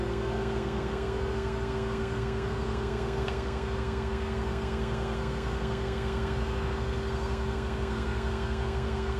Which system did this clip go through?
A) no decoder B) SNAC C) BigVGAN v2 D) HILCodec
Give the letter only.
B